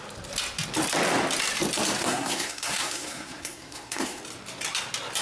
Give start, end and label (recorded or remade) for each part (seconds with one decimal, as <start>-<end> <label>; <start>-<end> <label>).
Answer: 0.0-2.0 recorded; 2.0-4.2 remade; 4.2-5.2 recorded